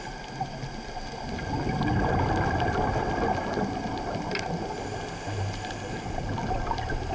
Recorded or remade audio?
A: recorded